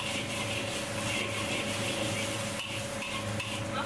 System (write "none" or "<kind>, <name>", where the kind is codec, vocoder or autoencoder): none